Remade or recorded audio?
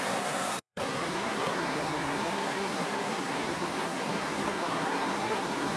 remade